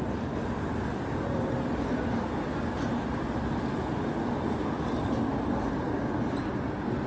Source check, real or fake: real